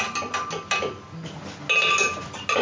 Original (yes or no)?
yes